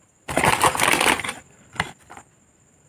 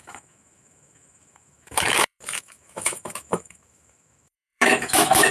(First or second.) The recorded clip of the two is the first